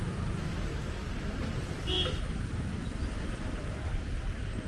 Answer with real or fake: real